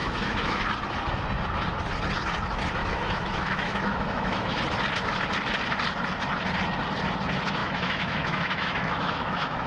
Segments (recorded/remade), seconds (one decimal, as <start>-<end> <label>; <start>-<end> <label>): 0.0-0.6 remade; 0.6-2.8 recorded; 2.8-4.6 remade; 4.6-7.6 recorded; 7.6-9.7 remade